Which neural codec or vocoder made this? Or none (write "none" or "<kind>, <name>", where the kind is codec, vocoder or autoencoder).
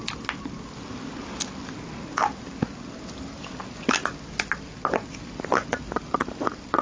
none